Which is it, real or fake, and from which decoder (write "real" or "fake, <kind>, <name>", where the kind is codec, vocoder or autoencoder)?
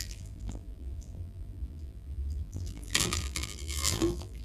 fake, vocoder, BigVGAN v2